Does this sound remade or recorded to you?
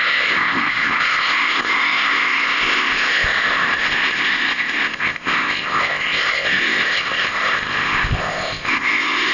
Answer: remade